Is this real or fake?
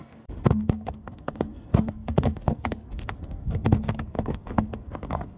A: fake